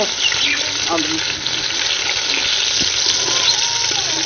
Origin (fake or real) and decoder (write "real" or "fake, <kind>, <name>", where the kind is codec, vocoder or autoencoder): real